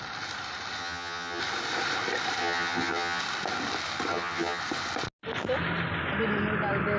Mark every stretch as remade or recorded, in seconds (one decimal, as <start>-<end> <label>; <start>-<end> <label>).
0.0-0.8 recorded; 0.8-1.4 remade; 1.4-2.4 recorded; 2.4-3.2 remade; 3.2-4.1 recorded; 4.1-4.6 remade; 4.6-7.0 recorded